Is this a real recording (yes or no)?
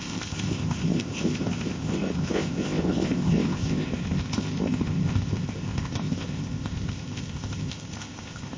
no